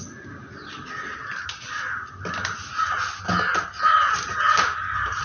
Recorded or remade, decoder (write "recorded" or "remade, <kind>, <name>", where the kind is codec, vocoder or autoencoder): recorded